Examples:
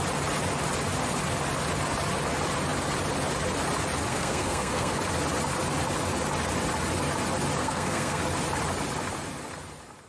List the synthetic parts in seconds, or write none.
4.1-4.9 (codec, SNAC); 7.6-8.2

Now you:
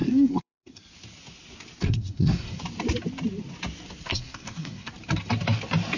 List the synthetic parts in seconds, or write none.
0.0-0.8 (codec, SNAC); 1.8-2.6; 4.1-4.9

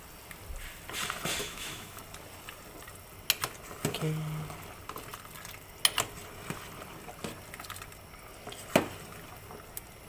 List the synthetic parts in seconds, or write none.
1.4-2.0 (autoencoder, DAC-VAE)